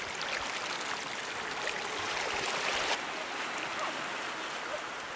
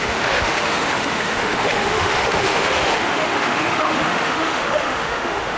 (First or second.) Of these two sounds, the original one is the first